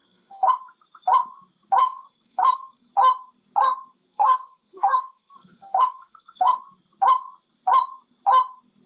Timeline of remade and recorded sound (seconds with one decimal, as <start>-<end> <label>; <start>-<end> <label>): 0.0-0.5 remade; 0.5-1.8 recorded; 1.8-2.9 remade; 2.9-4.1 recorded; 4.1-6.6 remade; 6.6-8.9 recorded